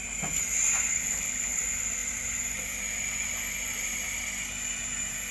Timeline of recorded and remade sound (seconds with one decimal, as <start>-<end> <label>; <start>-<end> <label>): 0.0-0.9 recorded; 0.9-1.6 remade; 1.6-5.3 recorded